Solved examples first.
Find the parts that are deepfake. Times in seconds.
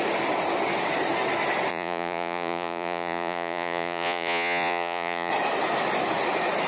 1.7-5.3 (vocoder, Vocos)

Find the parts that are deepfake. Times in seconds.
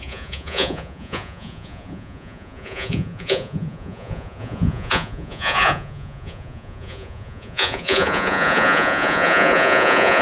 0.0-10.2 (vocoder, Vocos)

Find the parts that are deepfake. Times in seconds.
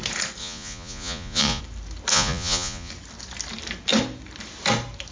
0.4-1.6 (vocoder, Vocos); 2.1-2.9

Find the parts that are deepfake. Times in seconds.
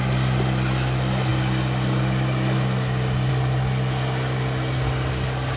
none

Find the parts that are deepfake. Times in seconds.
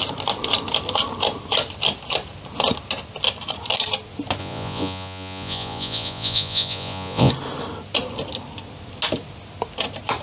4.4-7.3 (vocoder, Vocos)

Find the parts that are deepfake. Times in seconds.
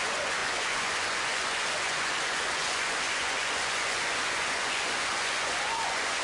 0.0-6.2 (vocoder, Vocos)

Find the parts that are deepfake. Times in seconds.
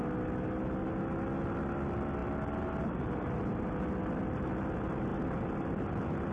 none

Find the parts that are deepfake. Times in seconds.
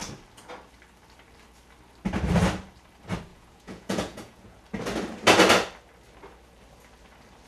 3.3-4.6 (vocoder, Vocos)